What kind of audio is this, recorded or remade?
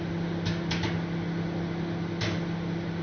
recorded